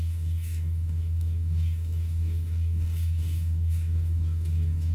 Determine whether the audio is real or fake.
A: fake